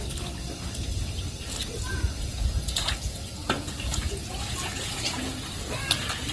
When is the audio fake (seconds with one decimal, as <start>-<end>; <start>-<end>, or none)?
2.3-5.3